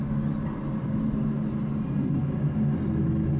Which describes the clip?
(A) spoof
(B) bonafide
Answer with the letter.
B